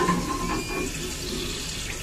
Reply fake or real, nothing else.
real